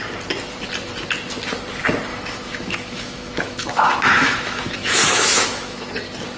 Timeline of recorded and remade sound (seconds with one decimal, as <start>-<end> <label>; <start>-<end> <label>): 0.0-2.1 recorded; 2.1-5.9 remade; 5.9-6.4 recorded